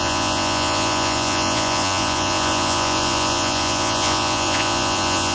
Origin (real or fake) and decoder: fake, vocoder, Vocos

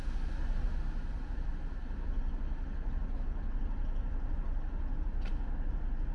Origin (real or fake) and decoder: real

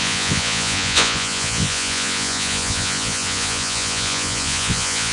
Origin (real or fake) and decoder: fake, vocoder, Vocos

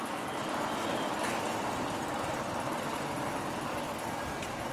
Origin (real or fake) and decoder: real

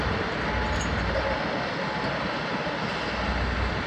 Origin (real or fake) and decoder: real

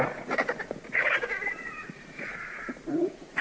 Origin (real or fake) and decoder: fake, vocoder, Vocos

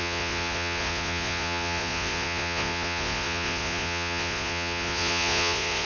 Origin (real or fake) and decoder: fake, vocoder, Vocos